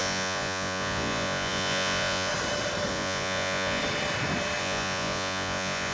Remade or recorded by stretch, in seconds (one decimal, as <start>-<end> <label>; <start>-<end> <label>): 0.0-2.3 remade; 2.3-2.9 recorded; 2.9-3.8 remade; 3.8-4.6 recorded; 4.6-5.9 remade